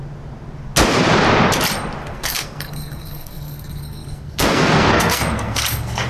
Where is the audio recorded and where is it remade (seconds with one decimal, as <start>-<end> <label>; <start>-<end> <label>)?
0.0-2.0 recorded; 2.0-6.1 remade